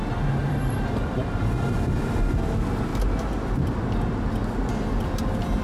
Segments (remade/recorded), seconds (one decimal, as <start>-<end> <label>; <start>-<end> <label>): 0.0-0.4 recorded; 0.4-1.2 remade; 1.2-5.6 recorded